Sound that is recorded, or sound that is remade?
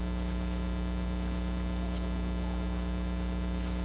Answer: recorded